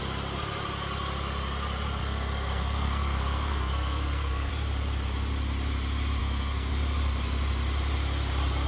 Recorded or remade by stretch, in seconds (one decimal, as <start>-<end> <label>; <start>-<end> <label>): 0.0-2.0 recorded; 2.0-4.5 remade; 4.5-6.2 recorded; 6.2-6.7 remade; 6.7-8.7 recorded